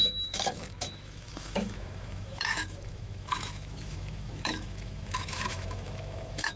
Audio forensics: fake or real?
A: fake